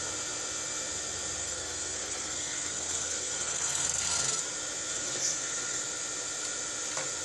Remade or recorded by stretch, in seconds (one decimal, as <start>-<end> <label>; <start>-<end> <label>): 0.0-1.4 recorded; 1.4-4.4 remade; 4.4-4.9 recorded; 4.9-5.8 remade; 5.8-7.2 recorded

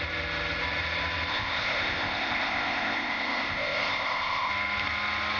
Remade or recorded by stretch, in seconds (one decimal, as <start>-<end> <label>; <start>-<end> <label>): 0.0-1.3 recorded; 1.3-4.5 remade; 4.5-5.4 recorded

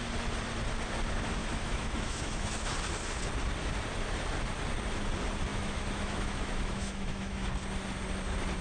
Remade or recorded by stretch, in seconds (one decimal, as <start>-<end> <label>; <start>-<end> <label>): 0.0-1.4 recorded; 1.4-2.5 remade; 2.5-5.5 recorded; 5.5-7.5 remade; 7.5-8.6 recorded

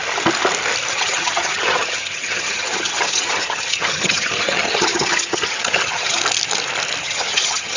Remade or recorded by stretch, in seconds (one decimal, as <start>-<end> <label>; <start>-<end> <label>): 0.0-0.9 recorded; 0.9-6.2 remade; 6.2-7.0 recorded; 7.0-7.8 remade

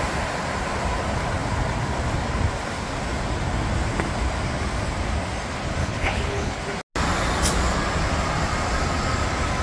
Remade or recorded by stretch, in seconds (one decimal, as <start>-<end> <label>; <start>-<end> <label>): 0.0-5.8 recorded; 5.8-6.6 remade; 6.6-9.6 recorded